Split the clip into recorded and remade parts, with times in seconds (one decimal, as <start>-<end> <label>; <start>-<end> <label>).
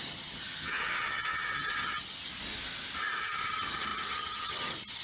0.0-2.3 remade; 2.3-3.2 recorded; 3.2-5.0 remade